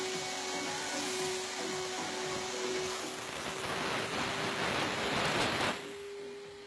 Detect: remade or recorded recorded